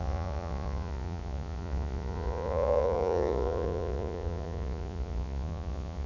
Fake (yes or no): yes